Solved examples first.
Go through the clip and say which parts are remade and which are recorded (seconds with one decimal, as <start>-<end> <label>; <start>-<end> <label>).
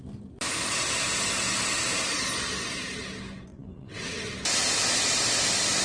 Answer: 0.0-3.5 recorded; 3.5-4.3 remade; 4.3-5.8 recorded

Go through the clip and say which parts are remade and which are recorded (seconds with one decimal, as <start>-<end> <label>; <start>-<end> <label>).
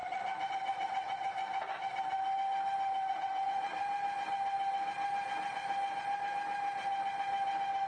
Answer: 0.0-0.5 recorded; 0.5-1.4 remade; 1.4-3.1 recorded; 3.1-3.8 remade; 3.8-7.9 recorded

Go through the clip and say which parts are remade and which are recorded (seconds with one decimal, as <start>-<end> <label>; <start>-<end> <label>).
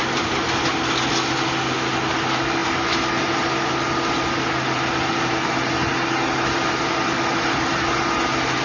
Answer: 0.0-8.6 recorded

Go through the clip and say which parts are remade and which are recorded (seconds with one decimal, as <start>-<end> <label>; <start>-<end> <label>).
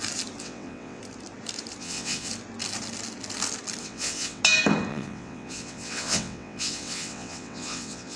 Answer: 0.0-0.4 recorded; 0.4-1.0 remade; 1.0-1.8 recorded; 1.8-2.3 remade; 2.3-3.8 recorded; 3.8-4.4 remade; 4.4-4.9 recorded; 4.9-8.2 remade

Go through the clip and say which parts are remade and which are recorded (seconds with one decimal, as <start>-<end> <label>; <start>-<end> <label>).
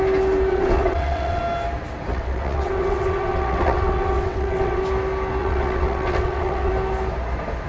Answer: 0.0-0.5 recorded; 0.5-1.4 remade; 1.4-2.1 recorded; 2.1-4.8 remade; 4.8-5.4 recorded; 5.4-6.7 remade; 6.7-7.7 recorded